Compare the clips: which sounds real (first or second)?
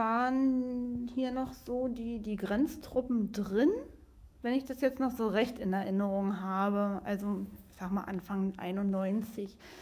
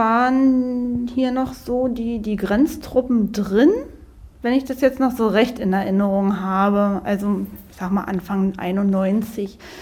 second